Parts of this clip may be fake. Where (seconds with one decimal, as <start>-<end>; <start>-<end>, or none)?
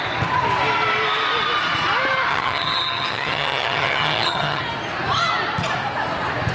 2.3-4.6